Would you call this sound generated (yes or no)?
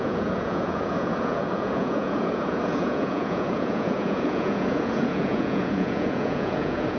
yes